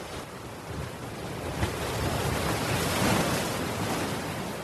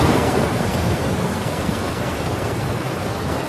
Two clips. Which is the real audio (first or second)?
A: first